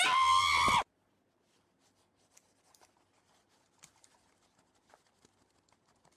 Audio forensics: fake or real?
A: real